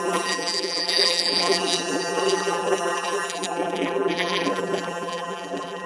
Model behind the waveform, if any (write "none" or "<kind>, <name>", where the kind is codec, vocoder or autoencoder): vocoder, BigVGAN v2